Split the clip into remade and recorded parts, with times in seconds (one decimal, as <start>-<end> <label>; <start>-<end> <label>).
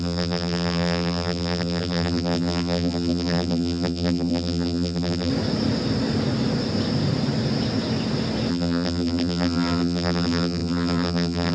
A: 0.0-5.3 remade; 5.3-8.5 recorded; 8.5-11.5 remade